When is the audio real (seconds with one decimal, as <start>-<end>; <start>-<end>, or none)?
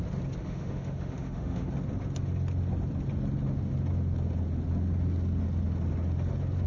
0.0-0.4; 1.7-6.7